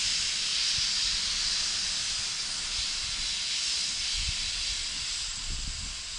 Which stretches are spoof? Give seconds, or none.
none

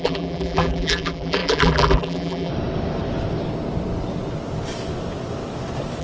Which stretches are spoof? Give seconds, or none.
0.0-2.5 (vocoder, BigVGAN v2)

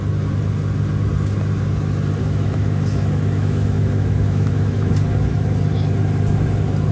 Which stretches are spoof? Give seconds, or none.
2.2-4.9 (autoencoder, DAC-VAE)

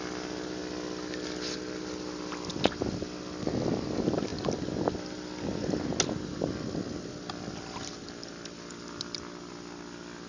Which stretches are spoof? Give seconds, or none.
none

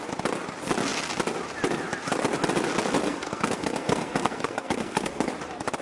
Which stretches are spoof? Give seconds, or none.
3.0-5.3 (codec, SNAC)

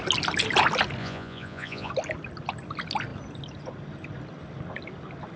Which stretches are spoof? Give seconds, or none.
1.0-1.9 (vocoder, Vocos)